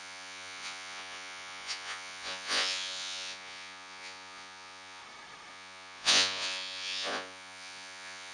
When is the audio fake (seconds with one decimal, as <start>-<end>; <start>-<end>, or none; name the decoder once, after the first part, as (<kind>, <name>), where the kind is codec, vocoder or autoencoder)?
0.0-5.0 (vocoder, Vocos); 5.5-8.3